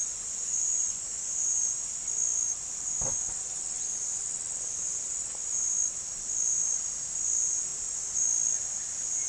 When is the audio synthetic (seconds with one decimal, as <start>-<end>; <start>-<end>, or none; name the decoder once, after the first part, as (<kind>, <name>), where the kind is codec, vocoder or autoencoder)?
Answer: 0.0-1.6 (vocoder, Vocos)